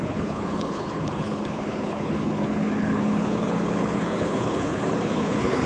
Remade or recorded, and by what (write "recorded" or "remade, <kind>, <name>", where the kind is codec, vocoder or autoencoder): remade, codec, HILCodec